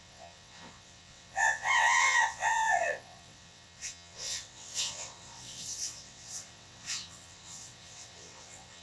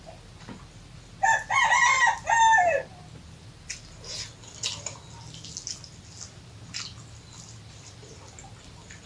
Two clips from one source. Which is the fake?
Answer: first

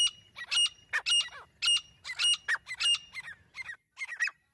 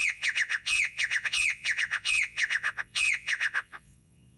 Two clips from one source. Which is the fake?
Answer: second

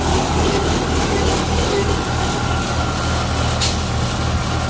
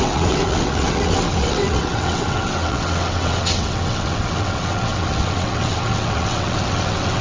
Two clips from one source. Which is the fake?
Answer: second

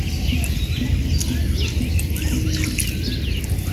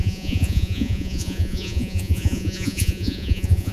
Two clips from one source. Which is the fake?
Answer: second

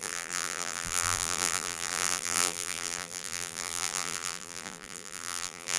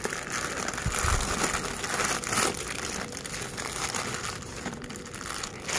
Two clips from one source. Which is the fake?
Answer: first